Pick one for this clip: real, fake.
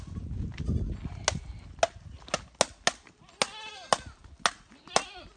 real